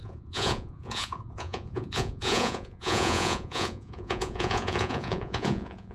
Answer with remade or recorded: remade